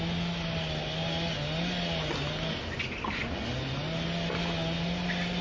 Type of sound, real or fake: real